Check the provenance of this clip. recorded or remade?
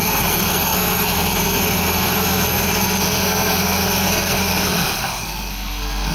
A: remade